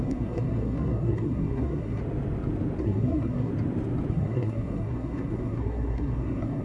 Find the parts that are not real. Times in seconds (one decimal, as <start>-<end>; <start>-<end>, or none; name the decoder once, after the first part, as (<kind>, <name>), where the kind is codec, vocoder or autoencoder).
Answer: 0.0-2.0 (codec, SNAC); 2.8-3.5; 4.1-6.6